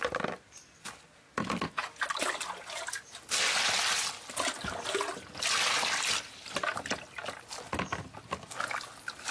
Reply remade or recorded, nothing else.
recorded